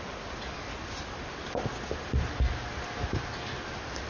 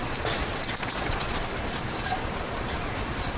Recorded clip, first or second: first